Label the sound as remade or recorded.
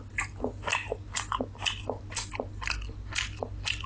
recorded